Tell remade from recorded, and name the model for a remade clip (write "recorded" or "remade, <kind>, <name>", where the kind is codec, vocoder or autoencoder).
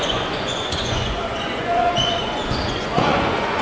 remade, vocoder, Vocos